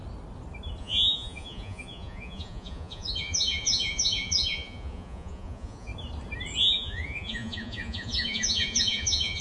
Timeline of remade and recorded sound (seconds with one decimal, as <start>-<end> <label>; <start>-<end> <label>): 0.0-0.8 recorded; 0.8-5.9 remade; 5.9-6.6 recorded; 6.6-9.4 remade